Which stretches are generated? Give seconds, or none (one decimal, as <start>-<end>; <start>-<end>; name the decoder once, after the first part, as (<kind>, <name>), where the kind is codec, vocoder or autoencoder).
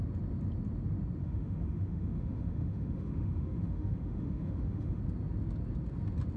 1.2-5.0 (autoencoder, DAC-VAE)